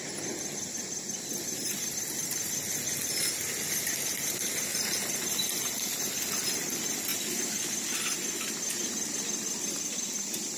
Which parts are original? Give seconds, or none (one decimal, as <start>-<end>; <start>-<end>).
0.0-10.6